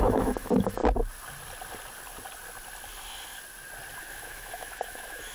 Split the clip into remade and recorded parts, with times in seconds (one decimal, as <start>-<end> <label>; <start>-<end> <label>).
0.0-0.8 remade; 0.8-4.0 recorded; 4.0-5.3 remade